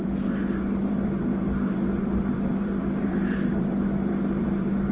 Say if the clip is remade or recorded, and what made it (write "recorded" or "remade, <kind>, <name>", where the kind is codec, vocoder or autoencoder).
remade, vocoder, BigVGAN v2